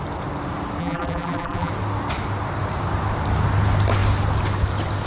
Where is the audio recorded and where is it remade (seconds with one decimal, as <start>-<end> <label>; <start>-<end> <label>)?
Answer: 0.0-0.8 recorded; 0.8-1.7 remade; 1.7-5.1 recorded